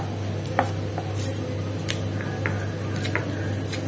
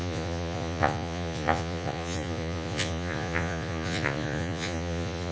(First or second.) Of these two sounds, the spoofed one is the second